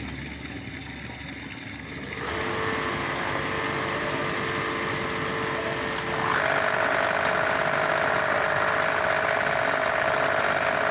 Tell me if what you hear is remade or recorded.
recorded